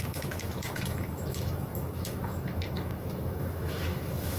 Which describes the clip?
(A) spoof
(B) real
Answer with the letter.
A